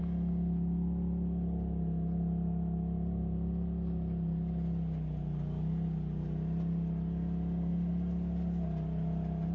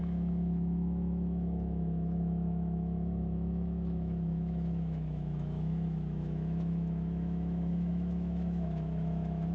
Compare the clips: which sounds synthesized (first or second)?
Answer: second